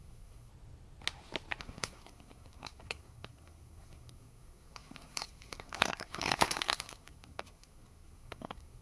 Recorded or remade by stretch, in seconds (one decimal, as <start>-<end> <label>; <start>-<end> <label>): 0.0-0.5 remade; 0.5-1.6 recorded; 1.6-8.8 remade